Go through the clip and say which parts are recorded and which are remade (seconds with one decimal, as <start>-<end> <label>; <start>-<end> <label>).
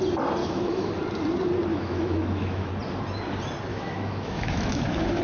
0.0-0.4 recorded; 0.4-0.9 remade; 0.9-1.7 recorded; 1.7-2.7 remade; 2.7-3.7 recorded; 3.7-5.2 remade